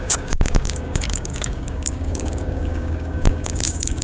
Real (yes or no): no